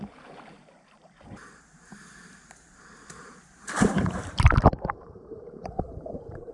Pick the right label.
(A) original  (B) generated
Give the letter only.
B